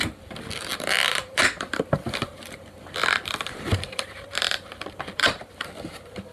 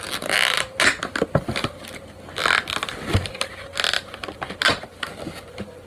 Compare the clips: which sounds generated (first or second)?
first